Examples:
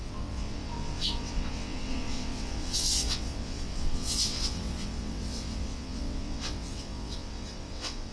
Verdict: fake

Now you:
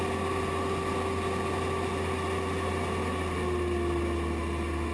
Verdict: real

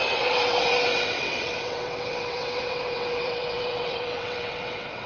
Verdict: fake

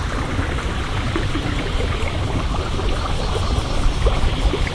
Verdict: real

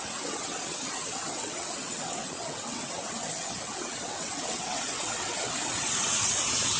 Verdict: fake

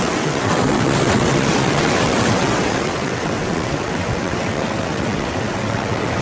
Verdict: fake